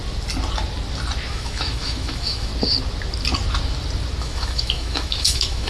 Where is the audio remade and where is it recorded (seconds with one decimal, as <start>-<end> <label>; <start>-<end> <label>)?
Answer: 0.0-1.3 recorded; 1.3-2.5 remade; 2.5-4.2 recorded; 4.2-5.7 remade